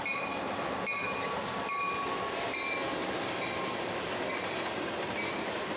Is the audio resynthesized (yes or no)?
no